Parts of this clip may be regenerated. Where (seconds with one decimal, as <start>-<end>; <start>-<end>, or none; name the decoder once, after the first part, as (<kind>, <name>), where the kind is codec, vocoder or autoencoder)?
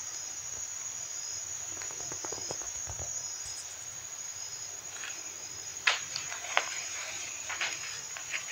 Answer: 1.5-2.0 (vocoder, BigVGAN v2); 5.7-7.1